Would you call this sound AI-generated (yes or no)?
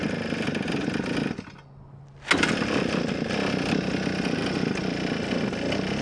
no